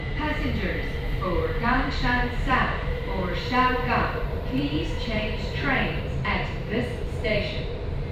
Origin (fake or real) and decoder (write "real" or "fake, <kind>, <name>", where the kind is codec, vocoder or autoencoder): fake, vocoder, BigVGAN v2